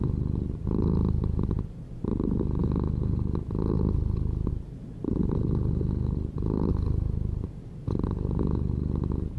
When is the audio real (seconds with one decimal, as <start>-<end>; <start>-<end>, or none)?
0.0-9.4